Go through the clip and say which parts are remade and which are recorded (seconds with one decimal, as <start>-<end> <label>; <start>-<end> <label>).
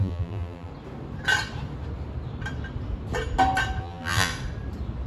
0.0-0.7 remade; 0.7-3.8 recorded; 3.8-4.3 remade; 4.3-5.1 recorded